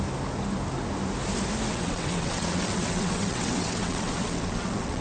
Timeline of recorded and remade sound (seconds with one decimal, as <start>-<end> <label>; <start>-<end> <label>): 0.0-1.7 recorded; 1.7-5.0 remade